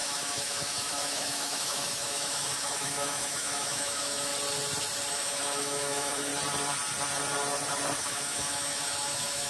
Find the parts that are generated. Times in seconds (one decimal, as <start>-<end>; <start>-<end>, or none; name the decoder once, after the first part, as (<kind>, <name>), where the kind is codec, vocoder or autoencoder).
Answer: 0.0-4.3 (autoencoder, DAC-VAE); 5.1-6.3; 8.0-9.5